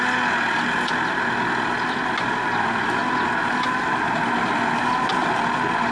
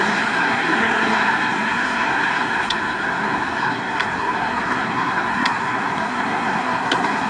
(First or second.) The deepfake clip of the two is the second